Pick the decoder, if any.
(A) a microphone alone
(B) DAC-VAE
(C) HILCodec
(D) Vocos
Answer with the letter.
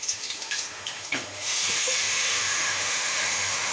B